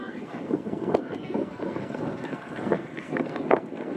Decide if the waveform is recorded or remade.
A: remade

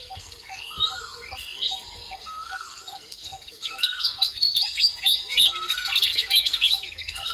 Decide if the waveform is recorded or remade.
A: remade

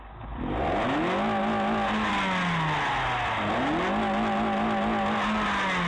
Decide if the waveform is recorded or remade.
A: recorded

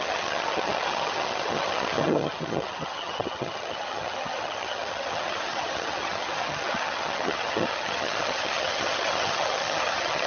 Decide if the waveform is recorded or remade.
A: remade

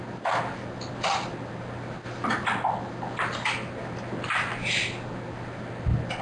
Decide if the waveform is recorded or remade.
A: recorded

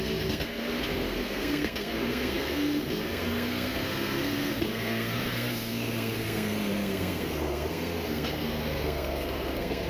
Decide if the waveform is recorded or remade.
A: remade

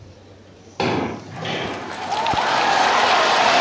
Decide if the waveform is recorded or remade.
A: recorded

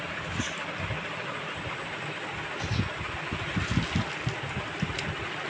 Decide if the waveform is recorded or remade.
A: recorded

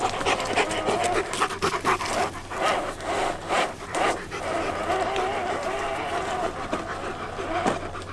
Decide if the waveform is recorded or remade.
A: recorded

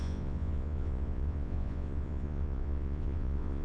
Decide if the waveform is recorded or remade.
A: remade